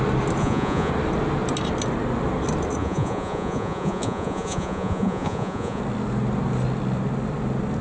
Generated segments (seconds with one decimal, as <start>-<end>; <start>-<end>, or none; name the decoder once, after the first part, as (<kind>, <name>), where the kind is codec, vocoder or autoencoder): 0.4-0.9 (vocoder, Vocos); 2.8-5.8